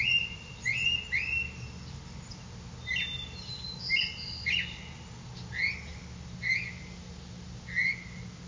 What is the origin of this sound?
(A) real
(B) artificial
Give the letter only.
A